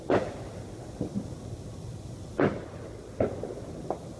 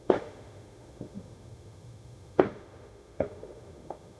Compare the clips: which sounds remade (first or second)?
second